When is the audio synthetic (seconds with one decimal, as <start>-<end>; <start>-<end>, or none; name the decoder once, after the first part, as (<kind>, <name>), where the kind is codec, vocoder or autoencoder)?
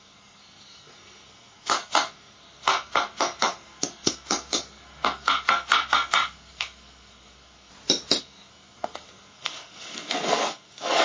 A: 0.0-7.7 (codec, SNAC); 8.2-11.0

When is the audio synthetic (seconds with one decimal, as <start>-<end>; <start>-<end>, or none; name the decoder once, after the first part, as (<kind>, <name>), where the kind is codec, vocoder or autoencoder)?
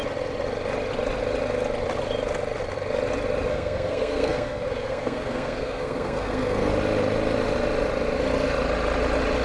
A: 3.5-6.7 (codec, SNAC)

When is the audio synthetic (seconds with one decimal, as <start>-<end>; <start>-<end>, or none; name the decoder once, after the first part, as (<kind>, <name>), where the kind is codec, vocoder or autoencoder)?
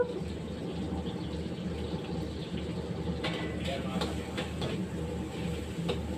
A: 2.4-4.0 (vocoder, BigVGAN v2)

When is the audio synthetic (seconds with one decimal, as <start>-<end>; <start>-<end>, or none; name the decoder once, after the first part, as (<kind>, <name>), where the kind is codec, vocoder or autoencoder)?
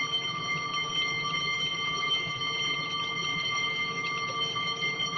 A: 1.7-2.4 (autoencoder, DAC-VAE); 3.3-4.0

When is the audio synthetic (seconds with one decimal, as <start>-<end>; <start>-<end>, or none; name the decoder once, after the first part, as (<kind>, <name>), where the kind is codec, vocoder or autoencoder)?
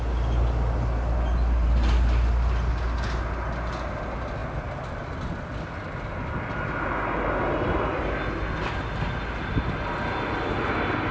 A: none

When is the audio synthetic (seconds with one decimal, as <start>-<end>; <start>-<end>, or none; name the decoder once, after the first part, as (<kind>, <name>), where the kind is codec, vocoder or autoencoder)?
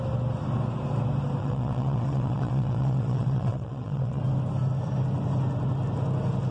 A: 1.4-4.2 (vocoder, WaveNeXt)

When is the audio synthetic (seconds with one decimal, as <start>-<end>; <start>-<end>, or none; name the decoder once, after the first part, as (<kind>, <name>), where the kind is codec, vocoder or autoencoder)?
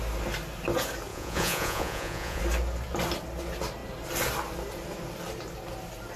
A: 1.1-2.4 (vocoder, Vocos)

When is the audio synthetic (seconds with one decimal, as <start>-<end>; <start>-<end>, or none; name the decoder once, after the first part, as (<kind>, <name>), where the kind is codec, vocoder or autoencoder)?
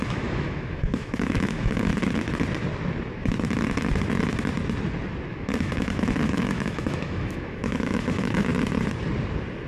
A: 0.0-1.9 (autoencoder, DAC-VAE); 5.3-8.5